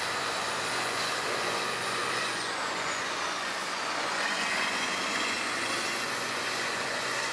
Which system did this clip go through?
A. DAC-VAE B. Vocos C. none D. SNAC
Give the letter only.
B